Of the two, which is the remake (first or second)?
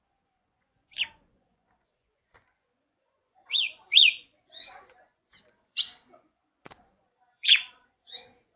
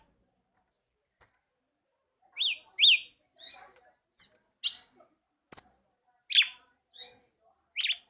first